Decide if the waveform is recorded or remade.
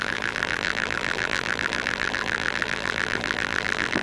remade